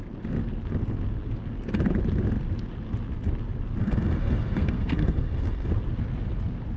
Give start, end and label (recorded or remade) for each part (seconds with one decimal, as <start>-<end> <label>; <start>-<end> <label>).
0.0-3.8 recorded; 3.8-5.7 remade; 5.7-6.8 recorded